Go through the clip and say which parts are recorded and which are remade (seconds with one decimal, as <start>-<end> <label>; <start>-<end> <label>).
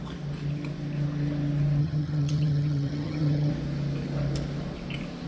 0.0-1.8 recorded; 1.8-3.5 remade; 3.5-5.3 recorded